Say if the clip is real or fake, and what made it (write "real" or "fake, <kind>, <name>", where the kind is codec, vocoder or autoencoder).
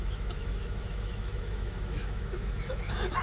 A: fake, autoencoder, DAC-VAE